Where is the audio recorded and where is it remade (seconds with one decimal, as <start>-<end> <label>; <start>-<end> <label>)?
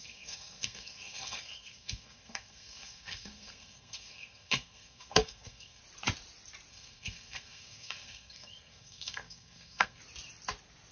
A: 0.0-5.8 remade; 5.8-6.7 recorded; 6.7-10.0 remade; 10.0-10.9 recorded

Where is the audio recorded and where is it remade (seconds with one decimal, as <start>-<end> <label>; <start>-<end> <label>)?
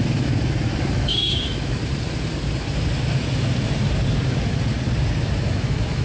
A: 0.0-1.8 remade; 1.8-5.4 recorded; 5.4-6.0 remade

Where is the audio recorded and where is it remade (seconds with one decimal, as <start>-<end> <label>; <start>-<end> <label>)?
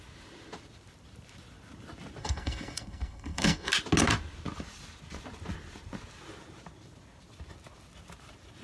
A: 0.0-2.2 recorded; 2.2-3.7 remade; 3.7-8.6 recorded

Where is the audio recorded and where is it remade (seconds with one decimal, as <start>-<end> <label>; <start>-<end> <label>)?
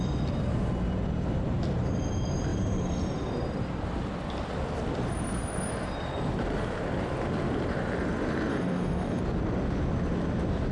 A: 0.0-8.5 recorded; 8.5-9.2 remade; 9.2-10.7 recorded